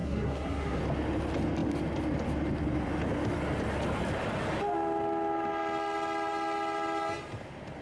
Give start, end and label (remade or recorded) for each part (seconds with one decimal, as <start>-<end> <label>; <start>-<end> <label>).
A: 0.0-0.8 remade; 0.8-7.8 recorded